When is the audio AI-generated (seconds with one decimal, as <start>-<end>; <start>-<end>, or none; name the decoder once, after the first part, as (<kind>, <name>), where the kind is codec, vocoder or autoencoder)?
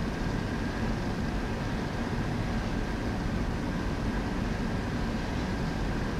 none